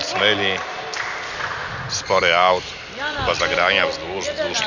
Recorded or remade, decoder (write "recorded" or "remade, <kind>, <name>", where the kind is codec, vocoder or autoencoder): recorded